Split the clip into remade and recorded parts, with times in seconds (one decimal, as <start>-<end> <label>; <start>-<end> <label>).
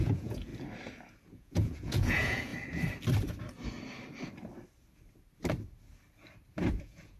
0.0-0.5 remade; 0.5-1.3 recorded; 1.3-2.5 remade; 2.5-6.8 recorded; 6.8-7.2 remade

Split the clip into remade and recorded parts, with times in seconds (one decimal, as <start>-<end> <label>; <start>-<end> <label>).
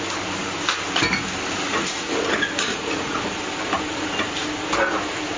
0.0-1.7 recorded; 1.7-2.2 remade; 2.2-2.7 recorded; 2.7-3.2 remade; 3.2-5.4 recorded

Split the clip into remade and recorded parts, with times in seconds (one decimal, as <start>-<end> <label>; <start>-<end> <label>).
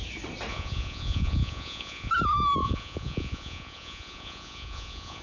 0.0-0.5 recorded; 0.5-2.1 remade; 2.1-2.6 recorded; 2.6-5.2 remade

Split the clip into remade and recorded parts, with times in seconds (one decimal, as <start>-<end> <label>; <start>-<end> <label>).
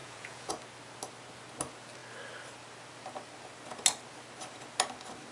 0.0-0.5 remade; 0.5-5.3 recorded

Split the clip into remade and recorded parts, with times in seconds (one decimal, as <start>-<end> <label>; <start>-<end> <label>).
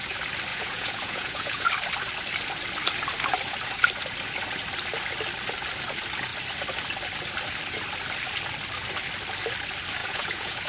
0.0-0.5 recorded; 0.5-1.7 remade; 1.7-10.0 recorded; 10.0-10.7 remade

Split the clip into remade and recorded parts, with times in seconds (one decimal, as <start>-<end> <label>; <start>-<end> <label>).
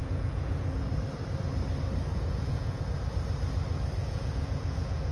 0.0-0.8 remade; 0.8-2.1 recorded; 2.1-2.8 remade; 2.8-4.0 recorded; 4.0-5.1 remade